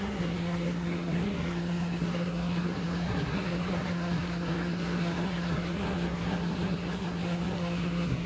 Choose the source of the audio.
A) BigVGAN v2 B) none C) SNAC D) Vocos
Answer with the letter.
C